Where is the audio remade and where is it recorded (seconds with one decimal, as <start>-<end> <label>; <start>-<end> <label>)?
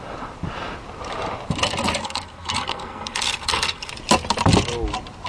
0.0-2.0 recorded; 2.0-3.9 remade; 3.9-5.3 recorded